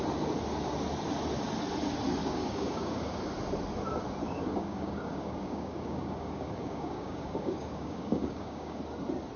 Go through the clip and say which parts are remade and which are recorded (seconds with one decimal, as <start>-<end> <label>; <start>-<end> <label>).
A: 0.0-2.2 recorded; 2.2-3.2 remade; 3.2-4.2 recorded; 4.2-8.8 remade; 8.8-9.4 recorded